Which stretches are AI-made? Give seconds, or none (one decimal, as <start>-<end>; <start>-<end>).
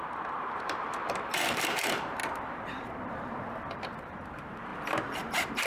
0.0-2.2; 2.9-4.7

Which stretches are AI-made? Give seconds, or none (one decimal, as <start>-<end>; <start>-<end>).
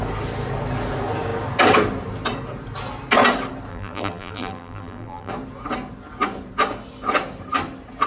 3.7-5.3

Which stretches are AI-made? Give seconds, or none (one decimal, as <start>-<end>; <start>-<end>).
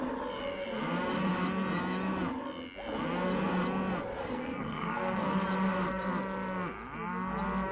4.2-5.5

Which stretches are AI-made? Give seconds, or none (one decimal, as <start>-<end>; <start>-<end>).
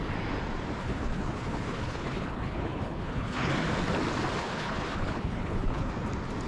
0.8-3.5; 4.4-5.9